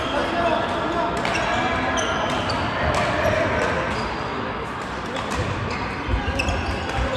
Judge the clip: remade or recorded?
recorded